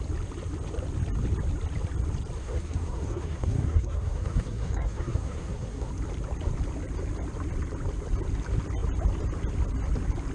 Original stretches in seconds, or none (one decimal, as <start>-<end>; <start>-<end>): 0.0-2.4; 5.9-10.3